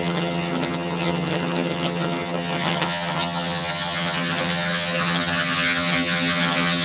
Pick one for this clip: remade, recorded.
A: remade